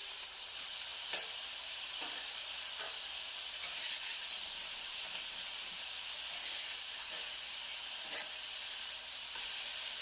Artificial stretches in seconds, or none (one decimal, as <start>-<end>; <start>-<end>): 0.0-10.0